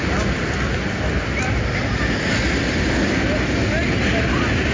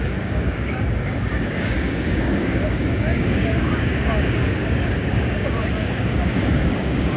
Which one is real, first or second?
first